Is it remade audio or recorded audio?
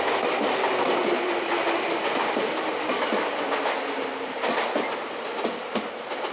recorded